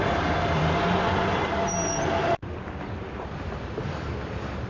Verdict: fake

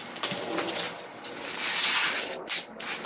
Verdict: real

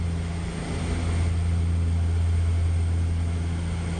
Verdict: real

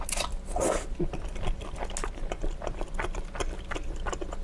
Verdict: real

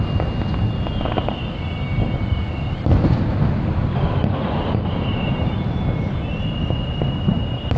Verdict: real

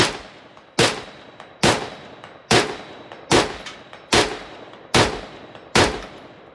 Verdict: real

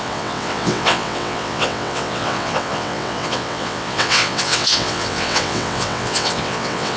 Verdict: fake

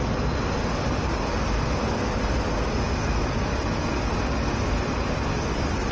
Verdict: real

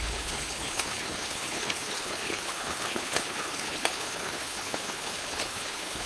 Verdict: fake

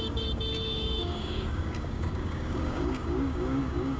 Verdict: fake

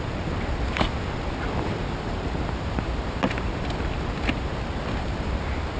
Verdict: real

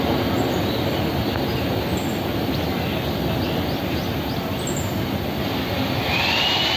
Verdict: real